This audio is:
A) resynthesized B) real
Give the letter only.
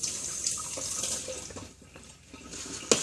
B